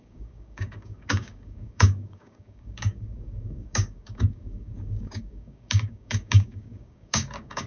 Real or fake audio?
fake